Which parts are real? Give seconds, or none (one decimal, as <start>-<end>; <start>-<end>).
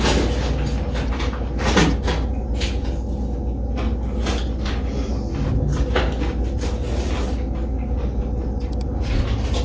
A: 0.0-9.6